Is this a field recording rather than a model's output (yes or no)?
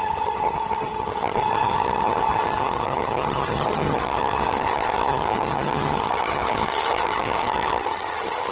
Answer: no